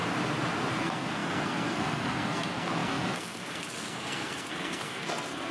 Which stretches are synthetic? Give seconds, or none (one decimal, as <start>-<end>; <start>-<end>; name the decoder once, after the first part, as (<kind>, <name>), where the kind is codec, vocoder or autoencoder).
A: 0.7-5.5 (codec, SNAC)